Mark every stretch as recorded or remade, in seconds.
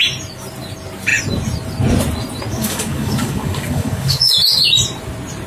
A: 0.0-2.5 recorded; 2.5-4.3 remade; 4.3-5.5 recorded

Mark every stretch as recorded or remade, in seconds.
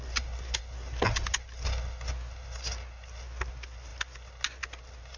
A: 0.0-5.2 recorded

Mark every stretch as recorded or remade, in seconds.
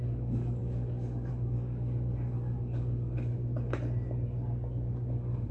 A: 0.0-3.4 remade; 3.4-5.1 recorded; 5.1-5.5 remade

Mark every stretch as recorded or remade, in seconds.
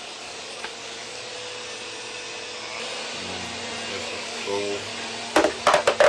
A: 0.0-1.3 remade; 1.3-3.9 recorded; 3.9-4.9 remade; 4.9-6.1 recorded